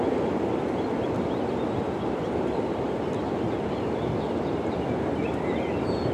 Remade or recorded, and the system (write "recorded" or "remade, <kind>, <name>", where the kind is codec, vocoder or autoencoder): recorded